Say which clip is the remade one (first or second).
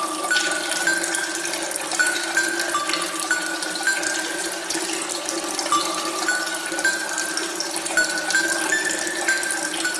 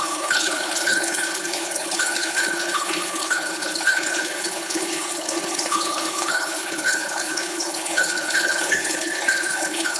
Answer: second